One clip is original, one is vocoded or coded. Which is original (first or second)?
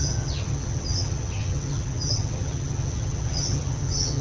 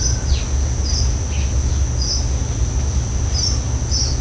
second